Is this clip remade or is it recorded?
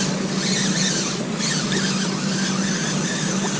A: recorded